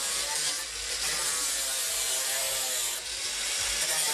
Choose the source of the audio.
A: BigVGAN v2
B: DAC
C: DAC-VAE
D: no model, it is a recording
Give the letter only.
D